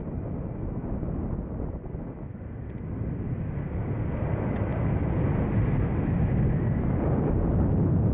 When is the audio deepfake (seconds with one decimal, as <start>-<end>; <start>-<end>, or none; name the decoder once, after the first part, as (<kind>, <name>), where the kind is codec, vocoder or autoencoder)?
none